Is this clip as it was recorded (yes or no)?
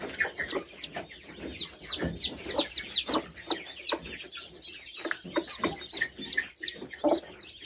yes